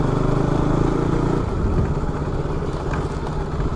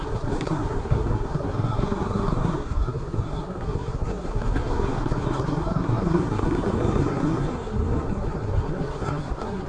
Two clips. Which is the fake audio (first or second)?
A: second